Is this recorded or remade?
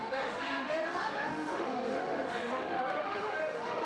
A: remade